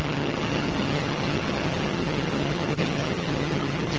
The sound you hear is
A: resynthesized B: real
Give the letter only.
A